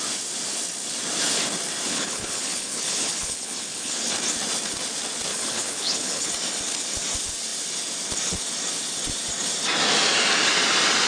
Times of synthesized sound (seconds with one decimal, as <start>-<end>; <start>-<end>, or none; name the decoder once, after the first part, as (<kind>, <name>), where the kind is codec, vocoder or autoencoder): 1.9-4.1 (codec, HILCodec); 5.3-6.3